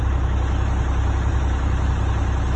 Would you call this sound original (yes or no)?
yes